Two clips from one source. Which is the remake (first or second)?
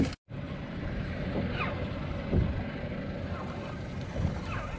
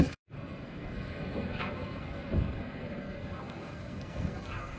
second